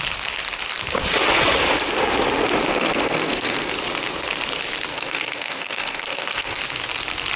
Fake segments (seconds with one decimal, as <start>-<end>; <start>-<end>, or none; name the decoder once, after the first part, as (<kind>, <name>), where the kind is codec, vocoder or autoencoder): 2.7-3.7 (codec, SNAC); 4.9-6.6